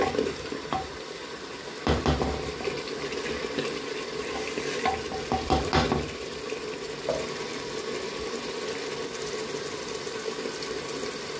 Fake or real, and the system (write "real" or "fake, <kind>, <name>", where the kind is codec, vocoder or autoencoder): real